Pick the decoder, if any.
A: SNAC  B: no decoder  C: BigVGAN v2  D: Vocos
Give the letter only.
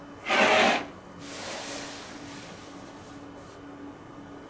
B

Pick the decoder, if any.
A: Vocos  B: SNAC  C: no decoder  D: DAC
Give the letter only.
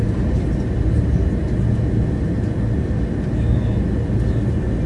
C